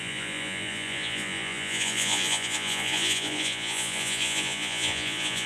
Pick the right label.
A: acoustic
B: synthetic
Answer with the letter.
B